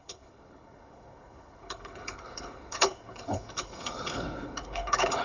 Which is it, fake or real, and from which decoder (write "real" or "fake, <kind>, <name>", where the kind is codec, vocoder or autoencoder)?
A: fake, codec, HILCodec